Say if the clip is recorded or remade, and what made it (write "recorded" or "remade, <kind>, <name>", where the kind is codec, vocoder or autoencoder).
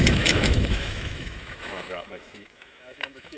remade, autoencoder, DAC-VAE